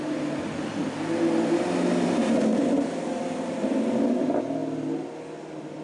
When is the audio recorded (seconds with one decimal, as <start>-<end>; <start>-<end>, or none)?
0.0-2.5; 3.9-5.8